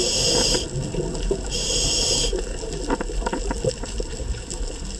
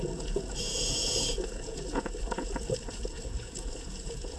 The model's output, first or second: second